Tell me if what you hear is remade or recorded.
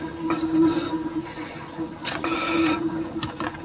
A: remade